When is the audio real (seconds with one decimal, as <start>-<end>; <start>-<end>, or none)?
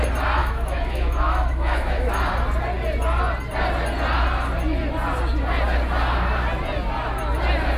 0.0-0.4; 2.1-7.8